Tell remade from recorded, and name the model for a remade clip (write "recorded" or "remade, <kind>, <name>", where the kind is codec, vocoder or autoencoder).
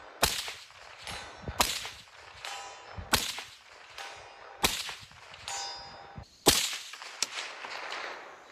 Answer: recorded